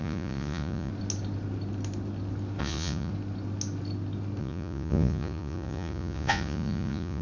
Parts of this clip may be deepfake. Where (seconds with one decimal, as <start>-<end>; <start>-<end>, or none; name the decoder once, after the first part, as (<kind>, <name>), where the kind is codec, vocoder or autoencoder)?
0.0-0.9 (vocoder, Vocos); 2.6-3.1; 4.4-7.2